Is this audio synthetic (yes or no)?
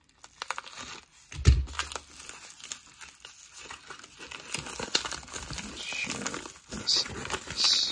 no